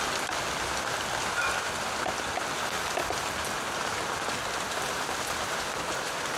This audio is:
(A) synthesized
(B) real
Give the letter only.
B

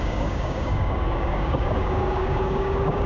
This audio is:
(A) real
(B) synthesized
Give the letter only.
B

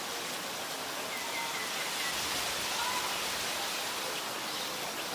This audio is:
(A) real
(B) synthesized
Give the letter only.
A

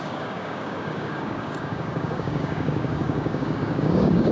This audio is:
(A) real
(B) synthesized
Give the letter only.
B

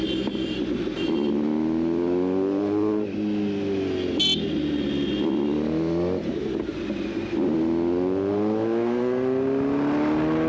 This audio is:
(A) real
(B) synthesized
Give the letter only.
A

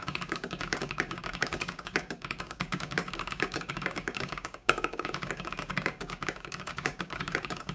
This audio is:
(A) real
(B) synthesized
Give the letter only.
B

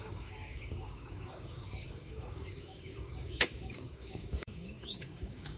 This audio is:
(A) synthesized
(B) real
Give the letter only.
A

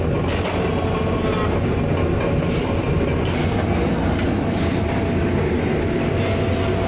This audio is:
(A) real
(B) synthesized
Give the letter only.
A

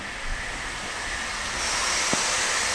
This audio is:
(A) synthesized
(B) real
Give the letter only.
B